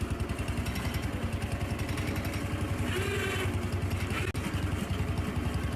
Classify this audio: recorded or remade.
recorded